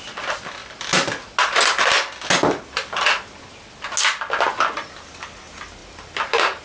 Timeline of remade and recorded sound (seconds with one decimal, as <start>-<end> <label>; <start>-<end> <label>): 0.0-6.6 recorded